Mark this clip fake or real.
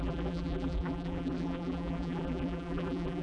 fake